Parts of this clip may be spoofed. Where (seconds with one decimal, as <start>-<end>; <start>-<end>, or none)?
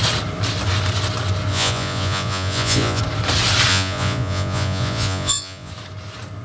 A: 1.5-3.0; 3.7-5.7